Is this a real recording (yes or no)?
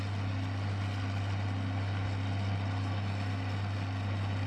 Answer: yes